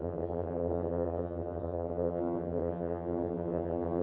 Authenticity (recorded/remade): remade